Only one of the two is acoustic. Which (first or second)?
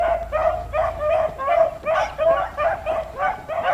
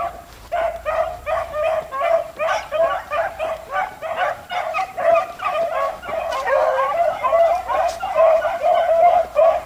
first